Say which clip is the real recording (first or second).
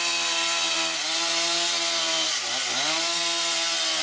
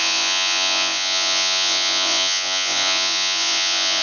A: first